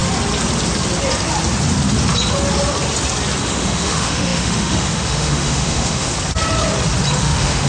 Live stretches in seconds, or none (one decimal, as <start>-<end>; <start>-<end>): 0.0-3.4; 6.1-7.2